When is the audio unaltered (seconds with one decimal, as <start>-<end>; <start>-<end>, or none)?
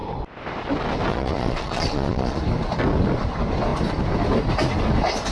0.0-1.1; 2.4-5.3